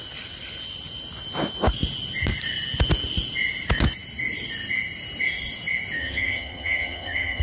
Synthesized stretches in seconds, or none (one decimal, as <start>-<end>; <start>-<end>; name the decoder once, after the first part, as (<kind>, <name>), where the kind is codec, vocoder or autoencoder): 6.0-7.4 (vocoder, HiFi-GAN)